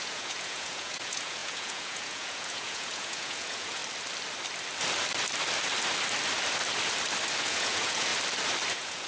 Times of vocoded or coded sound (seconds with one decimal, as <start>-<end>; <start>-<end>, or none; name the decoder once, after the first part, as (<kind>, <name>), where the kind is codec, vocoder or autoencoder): 0.0-3.8 (vocoder, Vocos); 7.4-8.1; 8.7-9.1